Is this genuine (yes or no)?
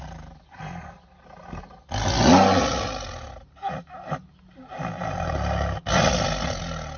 yes